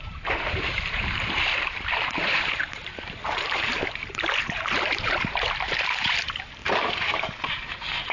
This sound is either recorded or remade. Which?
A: remade